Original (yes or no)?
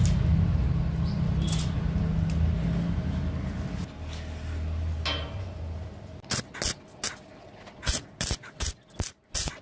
yes